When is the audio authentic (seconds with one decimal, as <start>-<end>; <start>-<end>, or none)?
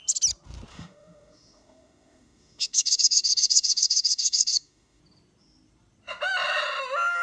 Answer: 0.0-0.7; 5.0-7.2